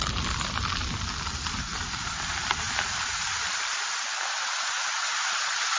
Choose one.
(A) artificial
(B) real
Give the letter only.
B